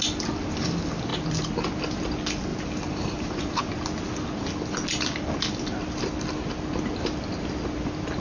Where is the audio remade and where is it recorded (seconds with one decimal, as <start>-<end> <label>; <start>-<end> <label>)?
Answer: 0.0-2.5 recorded; 2.5-3.6 remade; 3.6-8.2 recorded